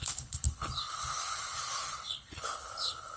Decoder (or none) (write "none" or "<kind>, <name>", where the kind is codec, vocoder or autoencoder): codec, HILCodec